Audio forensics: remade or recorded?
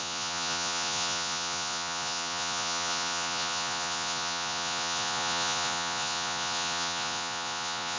remade